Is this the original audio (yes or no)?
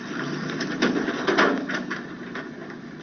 yes